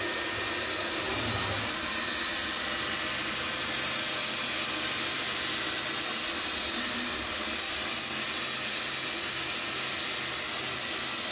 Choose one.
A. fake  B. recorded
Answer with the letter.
B